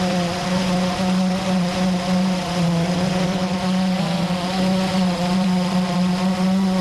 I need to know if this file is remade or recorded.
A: remade